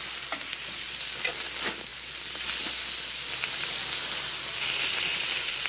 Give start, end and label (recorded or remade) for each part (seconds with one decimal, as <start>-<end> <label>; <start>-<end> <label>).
0.0-5.7 recorded